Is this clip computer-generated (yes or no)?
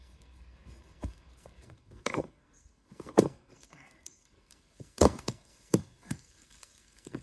yes